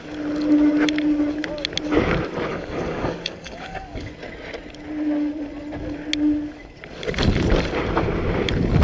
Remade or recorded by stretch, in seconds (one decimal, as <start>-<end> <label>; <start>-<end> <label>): 0.0-2.5 recorded; 2.5-4.1 remade; 4.1-8.8 recorded